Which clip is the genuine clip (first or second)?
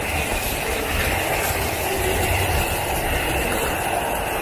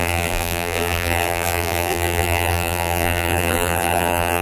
first